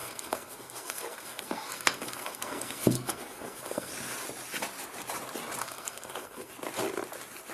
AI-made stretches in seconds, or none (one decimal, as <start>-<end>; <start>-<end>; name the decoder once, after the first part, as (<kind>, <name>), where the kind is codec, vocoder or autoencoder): 0.0-3.9 (codec, SNAC); 5.6-6.5